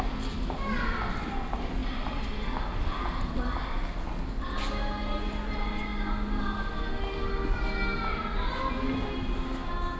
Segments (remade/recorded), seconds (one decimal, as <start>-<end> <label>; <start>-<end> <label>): 0.0-10.0 recorded